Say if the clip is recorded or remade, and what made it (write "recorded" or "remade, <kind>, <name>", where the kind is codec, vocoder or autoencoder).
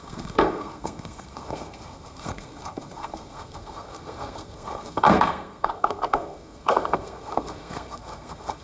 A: remade, codec, SNAC